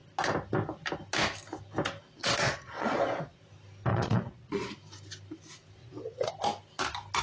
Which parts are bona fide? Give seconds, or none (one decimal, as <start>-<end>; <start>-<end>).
0.0-2.2; 3.4-3.9; 4.7-5.8; 6.3-7.2